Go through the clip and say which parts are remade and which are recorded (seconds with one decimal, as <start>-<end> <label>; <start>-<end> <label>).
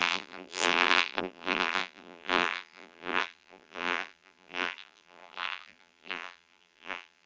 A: 0.0-7.3 remade